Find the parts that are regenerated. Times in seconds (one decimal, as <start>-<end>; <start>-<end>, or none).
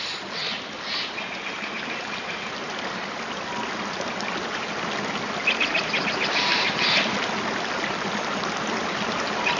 none